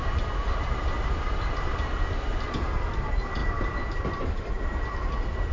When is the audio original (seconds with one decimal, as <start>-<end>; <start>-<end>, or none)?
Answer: 2.8-3.4; 4.5-5.5